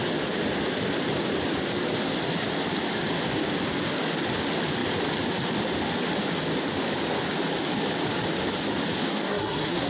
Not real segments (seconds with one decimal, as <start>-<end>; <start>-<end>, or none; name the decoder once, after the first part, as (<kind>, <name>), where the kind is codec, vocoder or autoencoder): 9.1-9.9 (codec, SNAC)